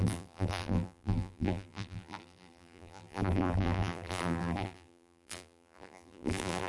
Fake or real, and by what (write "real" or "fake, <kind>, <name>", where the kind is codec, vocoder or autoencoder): fake, vocoder, BigVGAN v2